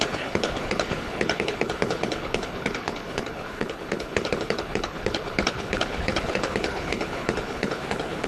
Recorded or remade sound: remade